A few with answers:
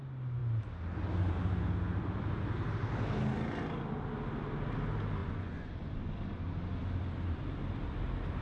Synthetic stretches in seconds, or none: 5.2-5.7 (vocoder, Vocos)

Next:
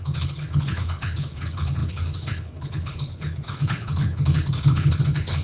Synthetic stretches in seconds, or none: 0.0-5.4 (codec, HILCodec)

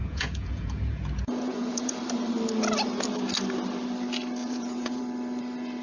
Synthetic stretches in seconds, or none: 0.0-2.0 (vocoder, Vocos); 4.4-5.0

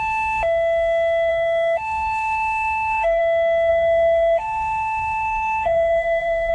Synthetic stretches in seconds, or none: 1.3-3.2 (codec, SNAC); 3.7-6.5

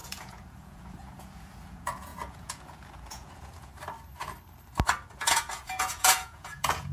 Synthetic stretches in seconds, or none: 0.0-3.7 (vocoder, Vocos); 5.1-6.9

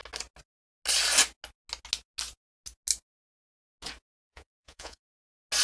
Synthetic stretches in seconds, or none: 4.2-5.0 (vocoder, Vocos)

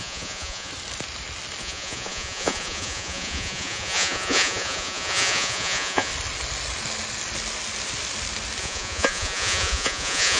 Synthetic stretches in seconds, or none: 0.0-0.7 (vocoder, Vocos); 1.6-6.1; 8.6-10.4

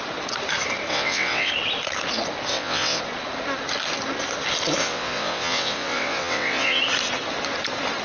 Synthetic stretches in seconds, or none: 0.9-1.5 (vocoder, WaveNeXt); 2.5-3.0; 4.8-6.8